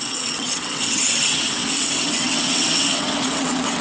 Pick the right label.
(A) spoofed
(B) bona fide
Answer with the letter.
A